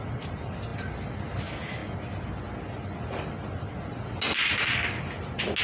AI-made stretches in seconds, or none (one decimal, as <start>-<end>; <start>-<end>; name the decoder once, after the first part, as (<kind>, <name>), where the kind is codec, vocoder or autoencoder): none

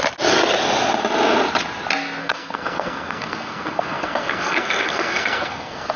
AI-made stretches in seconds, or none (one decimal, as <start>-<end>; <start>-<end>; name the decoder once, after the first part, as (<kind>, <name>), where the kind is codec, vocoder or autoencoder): 2.2-6.0 (codec, SNAC)

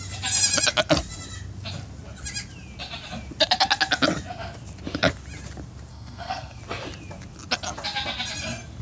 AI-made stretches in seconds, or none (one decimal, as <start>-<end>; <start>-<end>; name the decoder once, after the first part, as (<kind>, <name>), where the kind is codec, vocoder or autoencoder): 5.9-6.6 (codec, SNAC)

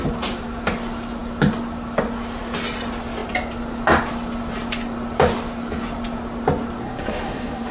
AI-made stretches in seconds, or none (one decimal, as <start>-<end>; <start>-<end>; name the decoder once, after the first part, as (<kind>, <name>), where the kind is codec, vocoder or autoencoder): 6.8-7.7 (codec, SNAC)

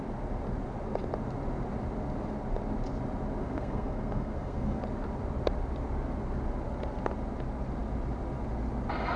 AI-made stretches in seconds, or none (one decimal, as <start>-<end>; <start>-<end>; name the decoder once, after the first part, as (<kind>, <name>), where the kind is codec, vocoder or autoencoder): 3.4-4.8 (codec, SNAC)

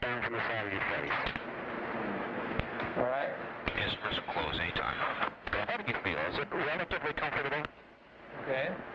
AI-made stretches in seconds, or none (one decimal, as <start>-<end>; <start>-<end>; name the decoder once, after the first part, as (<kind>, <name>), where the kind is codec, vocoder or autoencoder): 2.3-3.4 (codec, SNAC); 5.1-5.7

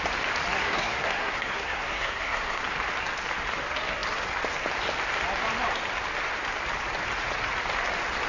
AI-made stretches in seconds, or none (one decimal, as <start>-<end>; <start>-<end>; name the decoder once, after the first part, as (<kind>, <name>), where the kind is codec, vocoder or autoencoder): 0.6-2.6 (codec, SNAC)

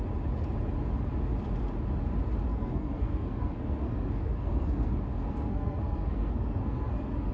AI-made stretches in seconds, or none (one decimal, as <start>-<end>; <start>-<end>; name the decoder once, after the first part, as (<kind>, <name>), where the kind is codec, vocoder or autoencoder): 2.5-7.3 (codec, SNAC)